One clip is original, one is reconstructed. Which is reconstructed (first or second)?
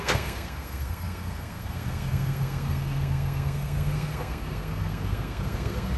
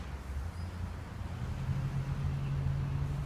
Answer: first